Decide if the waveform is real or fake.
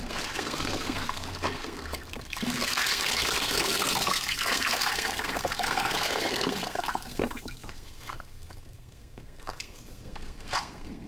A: fake